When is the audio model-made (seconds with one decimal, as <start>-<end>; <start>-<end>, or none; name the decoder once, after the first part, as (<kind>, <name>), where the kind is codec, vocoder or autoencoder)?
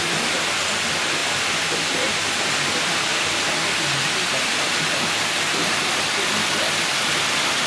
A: none